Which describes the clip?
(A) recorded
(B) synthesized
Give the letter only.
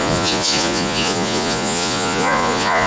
B